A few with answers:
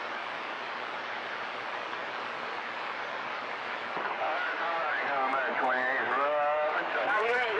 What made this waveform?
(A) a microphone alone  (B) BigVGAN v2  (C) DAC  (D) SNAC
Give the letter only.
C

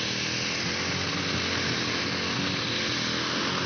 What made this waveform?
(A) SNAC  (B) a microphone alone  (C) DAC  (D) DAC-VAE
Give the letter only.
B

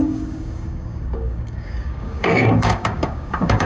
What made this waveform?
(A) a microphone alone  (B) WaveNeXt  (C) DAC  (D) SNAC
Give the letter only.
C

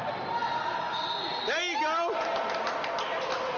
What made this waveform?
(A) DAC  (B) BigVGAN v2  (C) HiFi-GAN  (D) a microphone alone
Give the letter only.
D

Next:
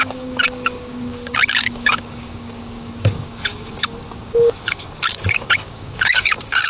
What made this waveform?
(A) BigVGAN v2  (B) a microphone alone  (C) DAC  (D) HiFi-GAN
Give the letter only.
C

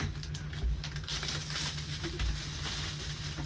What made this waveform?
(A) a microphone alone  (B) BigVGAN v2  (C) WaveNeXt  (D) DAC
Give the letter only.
A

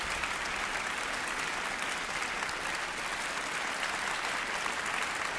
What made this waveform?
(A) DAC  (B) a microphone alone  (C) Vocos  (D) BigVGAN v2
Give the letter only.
B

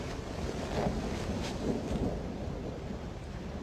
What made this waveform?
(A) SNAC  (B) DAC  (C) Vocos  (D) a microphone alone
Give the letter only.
D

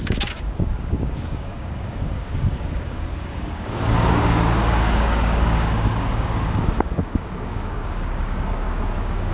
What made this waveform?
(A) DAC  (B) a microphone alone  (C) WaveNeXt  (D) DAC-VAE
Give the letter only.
A